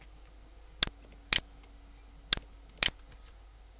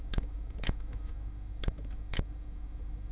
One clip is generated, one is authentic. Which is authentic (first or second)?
first